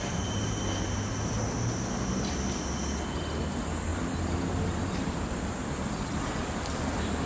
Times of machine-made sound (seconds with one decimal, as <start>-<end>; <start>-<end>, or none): 3.9-5.8